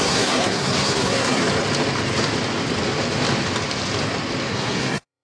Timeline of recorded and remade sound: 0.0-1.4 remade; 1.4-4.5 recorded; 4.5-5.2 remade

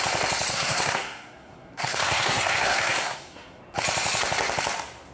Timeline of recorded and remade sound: 0.0-0.5 recorded; 0.5-3.6 remade; 3.6-5.1 recorded

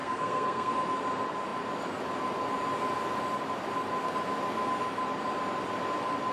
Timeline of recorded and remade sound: 0.0-0.7 remade; 0.7-6.3 recorded

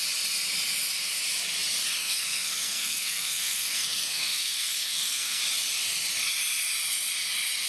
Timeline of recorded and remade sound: 0.0-2.0 recorded; 2.0-5.4 remade; 5.4-7.7 recorded